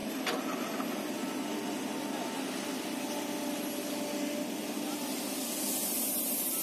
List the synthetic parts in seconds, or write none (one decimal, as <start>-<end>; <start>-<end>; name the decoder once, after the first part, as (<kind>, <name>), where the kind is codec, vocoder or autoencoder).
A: none